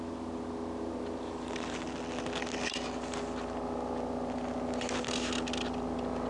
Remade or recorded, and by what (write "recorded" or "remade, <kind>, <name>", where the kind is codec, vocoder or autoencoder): recorded